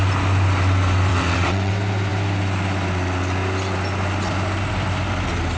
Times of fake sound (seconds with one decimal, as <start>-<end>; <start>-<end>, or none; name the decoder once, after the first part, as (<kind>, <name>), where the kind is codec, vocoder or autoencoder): 1.1-1.7 (vocoder, WaveNeXt)